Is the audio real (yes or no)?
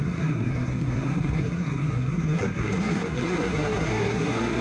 no